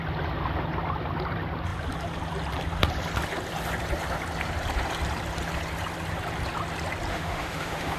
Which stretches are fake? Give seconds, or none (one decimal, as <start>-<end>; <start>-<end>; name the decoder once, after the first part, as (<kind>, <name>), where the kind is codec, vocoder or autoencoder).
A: 7.1-8.0 (autoencoder, DAC-VAE)